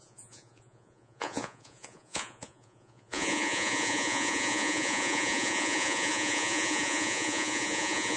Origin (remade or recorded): remade